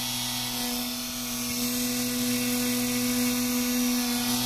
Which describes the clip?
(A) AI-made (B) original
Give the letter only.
B